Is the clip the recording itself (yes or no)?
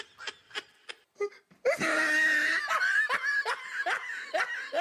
yes